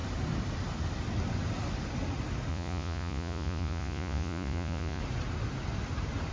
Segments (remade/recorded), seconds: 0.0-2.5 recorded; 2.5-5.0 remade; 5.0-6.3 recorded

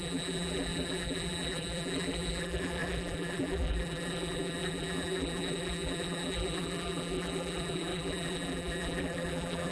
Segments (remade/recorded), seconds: 0.0-9.7 remade

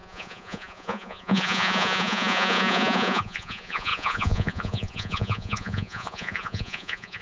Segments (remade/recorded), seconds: 0.0-7.2 remade